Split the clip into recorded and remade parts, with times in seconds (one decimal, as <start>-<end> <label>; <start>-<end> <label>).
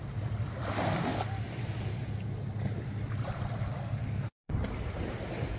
0.0-4.0 recorded; 4.0-4.5 remade; 4.5-5.6 recorded